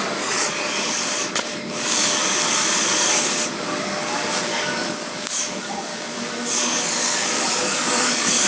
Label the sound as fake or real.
fake